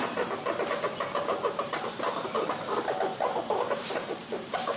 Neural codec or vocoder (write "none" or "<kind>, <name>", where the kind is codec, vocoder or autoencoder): vocoder, BigVGAN v2